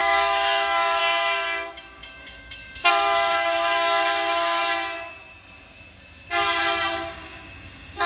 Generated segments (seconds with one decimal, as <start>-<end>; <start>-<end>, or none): 0.0-4.6; 6.6-8.1